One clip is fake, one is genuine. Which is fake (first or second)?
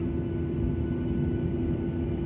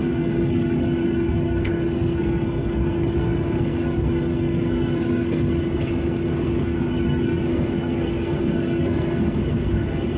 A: second